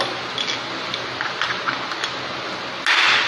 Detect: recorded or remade recorded